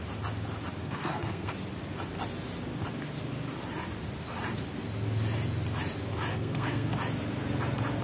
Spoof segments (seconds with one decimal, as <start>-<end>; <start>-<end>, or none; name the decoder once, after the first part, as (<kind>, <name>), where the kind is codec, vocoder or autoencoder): 0.8-1.5 (codec, SNAC); 6.3-6.9